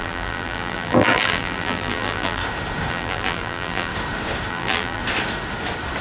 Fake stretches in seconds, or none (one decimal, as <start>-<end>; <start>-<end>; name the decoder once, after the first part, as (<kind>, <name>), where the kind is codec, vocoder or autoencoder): 0.0-2.4 (vocoder, BigVGAN v2); 2.9-3.9; 4.5-5.0